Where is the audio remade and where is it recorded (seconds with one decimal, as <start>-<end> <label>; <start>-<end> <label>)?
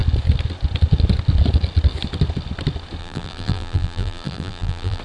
0.0-3.0 recorded; 3.0-5.0 remade